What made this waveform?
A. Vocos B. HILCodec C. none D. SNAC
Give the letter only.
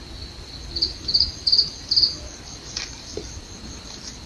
C